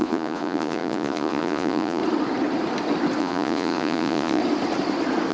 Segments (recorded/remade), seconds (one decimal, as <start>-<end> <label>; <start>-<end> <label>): 0.0-2.0 remade; 2.0-3.2 recorded; 3.2-4.4 remade; 4.4-5.3 recorded